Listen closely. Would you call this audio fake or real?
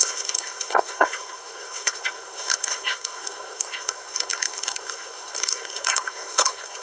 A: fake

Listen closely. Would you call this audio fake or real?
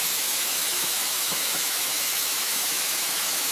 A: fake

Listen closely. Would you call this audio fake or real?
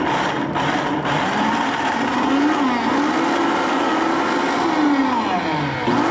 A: real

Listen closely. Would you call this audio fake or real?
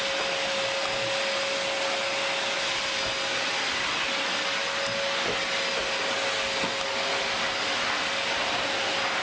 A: real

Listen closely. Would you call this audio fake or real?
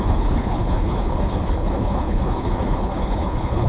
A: fake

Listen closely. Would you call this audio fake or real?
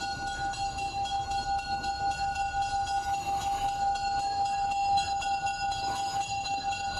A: fake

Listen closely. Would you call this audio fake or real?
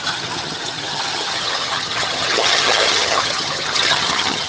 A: fake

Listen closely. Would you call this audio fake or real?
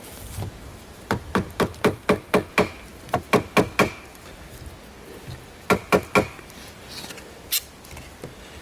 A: real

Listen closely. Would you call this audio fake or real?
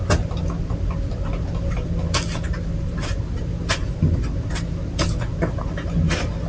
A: real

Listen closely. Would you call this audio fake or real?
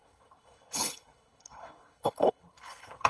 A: fake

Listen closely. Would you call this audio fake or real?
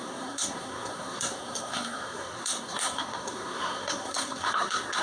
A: fake